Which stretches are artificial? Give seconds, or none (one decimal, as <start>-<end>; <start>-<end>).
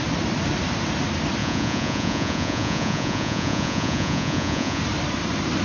1.4-4.8